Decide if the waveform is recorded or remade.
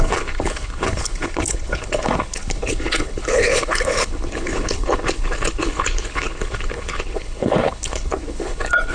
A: remade